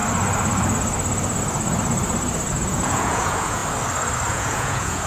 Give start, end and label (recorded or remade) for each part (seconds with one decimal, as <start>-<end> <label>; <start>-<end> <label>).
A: 0.0-2.5 recorded; 2.5-3.6 remade; 3.6-4.3 recorded; 4.3-5.1 remade

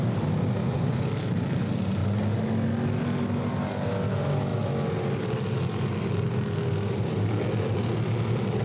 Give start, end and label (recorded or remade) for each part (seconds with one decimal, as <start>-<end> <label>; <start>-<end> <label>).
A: 0.0-0.6 recorded; 0.6-1.1 remade; 1.1-8.6 recorded

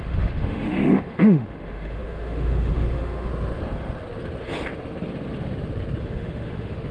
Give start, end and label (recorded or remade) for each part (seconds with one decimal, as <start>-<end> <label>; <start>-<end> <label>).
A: 0.0-3.3 remade; 3.3-6.0 recorded; 6.0-6.9 remade